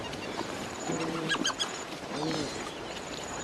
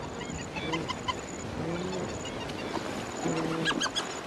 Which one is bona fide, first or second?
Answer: second